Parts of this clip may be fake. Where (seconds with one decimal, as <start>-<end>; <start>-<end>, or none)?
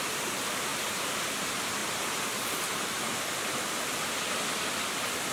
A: 0.0-0.7; 1.3-1.8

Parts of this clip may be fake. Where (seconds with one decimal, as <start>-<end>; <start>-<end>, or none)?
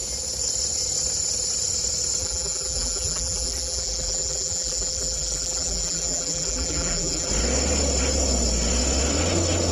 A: 2.2-7.3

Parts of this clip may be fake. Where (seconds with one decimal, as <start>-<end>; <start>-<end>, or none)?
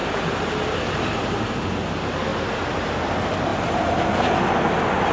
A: none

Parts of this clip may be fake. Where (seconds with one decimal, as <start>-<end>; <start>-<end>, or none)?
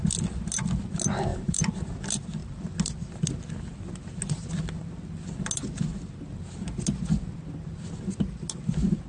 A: 1.3-2.0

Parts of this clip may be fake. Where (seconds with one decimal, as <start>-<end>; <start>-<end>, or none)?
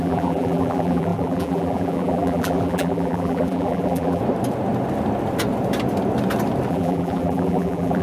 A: 0.0-4.2; 6.7-8.0